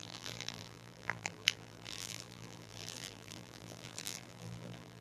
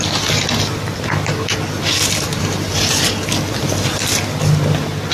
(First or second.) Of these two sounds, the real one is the second